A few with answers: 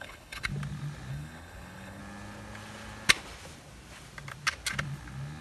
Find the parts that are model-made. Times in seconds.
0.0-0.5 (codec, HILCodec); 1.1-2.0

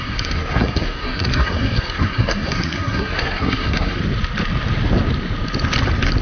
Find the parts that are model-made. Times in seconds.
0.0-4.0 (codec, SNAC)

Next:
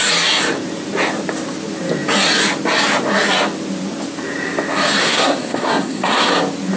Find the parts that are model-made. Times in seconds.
5.0-6.3 (codec, SNAC)

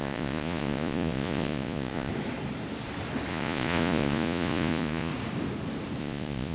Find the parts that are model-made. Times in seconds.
0.0-2.1 (vocoder, Vocos); 3.3-5.1; 6.0-6.5